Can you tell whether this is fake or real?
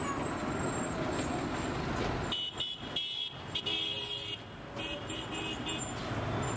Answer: real